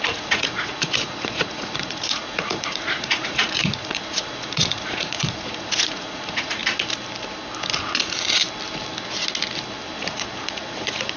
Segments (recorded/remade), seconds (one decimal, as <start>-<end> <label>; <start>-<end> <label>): 0.0-6.6 remade; 6.6-7.8 recorded; 7.8-8.4 remade; 8.4-10.0 recorded; 10.0-11.2 remade